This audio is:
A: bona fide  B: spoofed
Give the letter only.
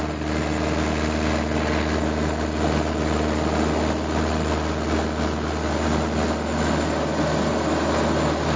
A